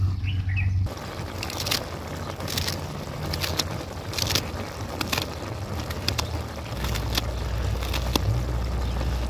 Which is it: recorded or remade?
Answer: recorded